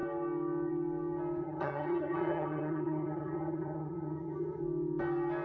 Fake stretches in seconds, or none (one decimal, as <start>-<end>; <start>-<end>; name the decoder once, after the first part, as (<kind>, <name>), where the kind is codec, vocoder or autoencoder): 1.4-4.6 (vocoder, HiFi-GAN)